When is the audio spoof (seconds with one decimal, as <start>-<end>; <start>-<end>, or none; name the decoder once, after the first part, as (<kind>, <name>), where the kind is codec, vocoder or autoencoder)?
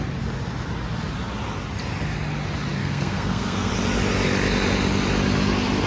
2.8-3.7 (codec, SNAC)